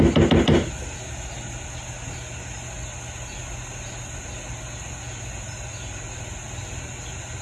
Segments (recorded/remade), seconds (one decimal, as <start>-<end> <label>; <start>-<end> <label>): 0.0-7.4 recorded